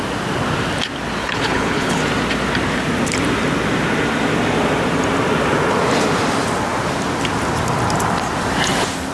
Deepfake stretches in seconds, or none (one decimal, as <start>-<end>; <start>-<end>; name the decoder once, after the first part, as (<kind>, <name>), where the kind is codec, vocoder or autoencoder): 1.2-2.0 (codec, HILCodec)